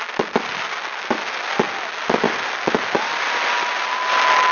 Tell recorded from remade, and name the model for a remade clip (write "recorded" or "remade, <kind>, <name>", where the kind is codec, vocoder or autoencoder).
recorded